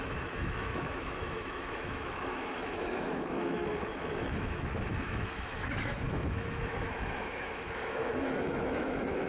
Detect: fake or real fake